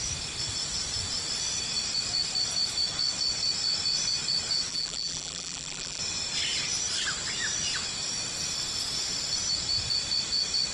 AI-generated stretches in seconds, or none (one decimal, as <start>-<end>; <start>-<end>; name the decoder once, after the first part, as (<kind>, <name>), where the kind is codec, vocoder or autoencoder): 4.7-6.0 (vocoder, BigVGAN v2)